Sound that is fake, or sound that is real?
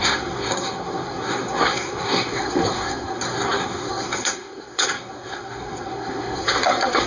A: fake